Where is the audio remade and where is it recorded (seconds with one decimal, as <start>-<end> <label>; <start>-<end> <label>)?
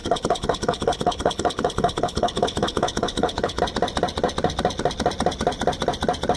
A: 0.0-3.6 remade; 3.6-6.4 recorded